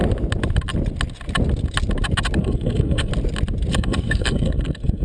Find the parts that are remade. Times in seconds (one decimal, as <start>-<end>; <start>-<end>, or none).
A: 2.4-3.1; 3.7-5.0